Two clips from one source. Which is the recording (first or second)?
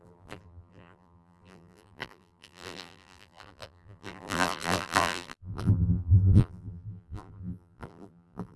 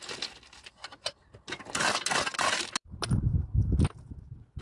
second